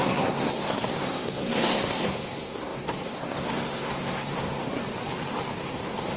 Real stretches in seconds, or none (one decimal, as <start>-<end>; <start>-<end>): 4.8-5.6